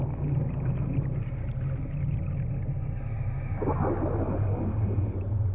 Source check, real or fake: real